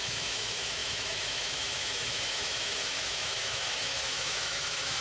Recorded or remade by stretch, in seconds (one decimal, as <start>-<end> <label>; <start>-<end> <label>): 0.0-5.0 remade